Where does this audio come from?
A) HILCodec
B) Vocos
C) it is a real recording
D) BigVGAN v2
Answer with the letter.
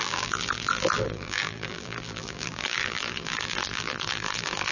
D